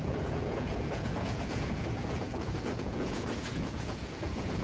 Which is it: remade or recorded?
remade